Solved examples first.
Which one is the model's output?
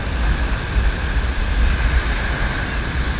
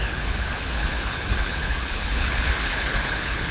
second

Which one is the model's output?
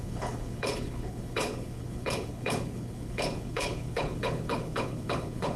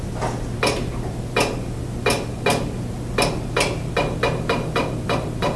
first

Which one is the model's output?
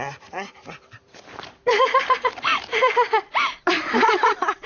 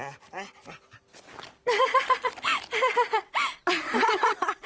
first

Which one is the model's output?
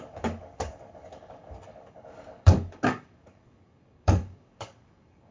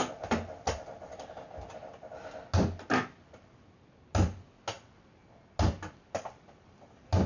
first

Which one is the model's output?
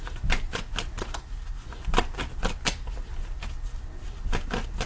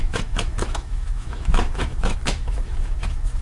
second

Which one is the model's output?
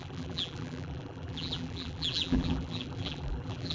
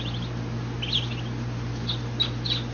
first